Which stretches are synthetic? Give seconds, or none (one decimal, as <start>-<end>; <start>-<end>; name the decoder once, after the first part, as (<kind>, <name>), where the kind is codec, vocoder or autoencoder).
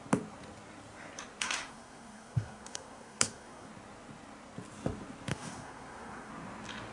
1.4-3.7 (codec, SNAC); 5.3-6.3